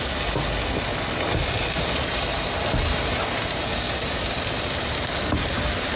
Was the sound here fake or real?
real